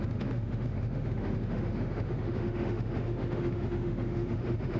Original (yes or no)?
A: no